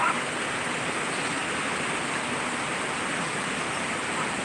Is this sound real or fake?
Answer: real